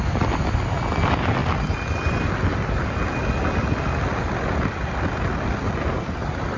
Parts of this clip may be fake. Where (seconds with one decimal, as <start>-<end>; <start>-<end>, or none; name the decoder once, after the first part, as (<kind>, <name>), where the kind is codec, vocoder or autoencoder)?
none